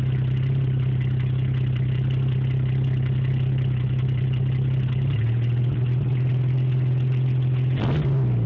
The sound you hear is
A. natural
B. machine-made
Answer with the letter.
A